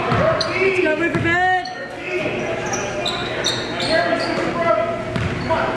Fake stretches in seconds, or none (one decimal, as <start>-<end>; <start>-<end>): 0.9-2.2